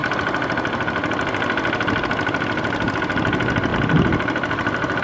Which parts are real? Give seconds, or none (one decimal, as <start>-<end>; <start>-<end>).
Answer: 0.0-3.0